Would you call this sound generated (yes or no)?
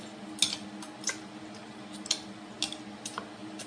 no